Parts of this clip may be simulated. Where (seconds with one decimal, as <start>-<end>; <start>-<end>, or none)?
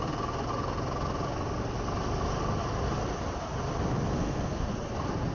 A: 4.1-4.6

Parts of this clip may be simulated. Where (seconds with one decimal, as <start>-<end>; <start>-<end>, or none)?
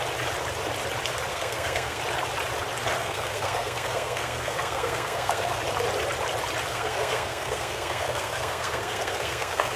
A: 1.3-2.0; 3.0-5.6; 6.7-9.8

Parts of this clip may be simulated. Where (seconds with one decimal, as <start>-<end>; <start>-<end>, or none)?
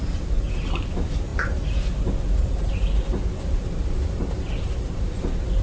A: none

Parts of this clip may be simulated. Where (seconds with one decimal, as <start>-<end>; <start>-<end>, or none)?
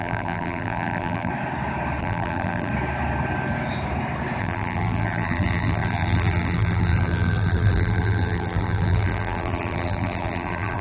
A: 0.0-1.3; 2.0-2.7; 4.4-10.8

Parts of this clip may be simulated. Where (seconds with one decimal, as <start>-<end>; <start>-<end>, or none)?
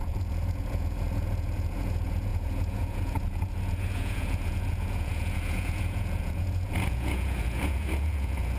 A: 0.0-8.6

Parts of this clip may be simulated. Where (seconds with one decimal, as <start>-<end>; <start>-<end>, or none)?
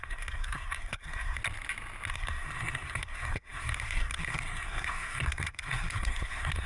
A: 0.0-1.4; 2.1-6.7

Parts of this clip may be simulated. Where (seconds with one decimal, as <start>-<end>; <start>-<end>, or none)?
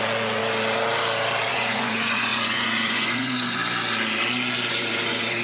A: 0.0-0.4; 1.5-3.6; 4.7-5.4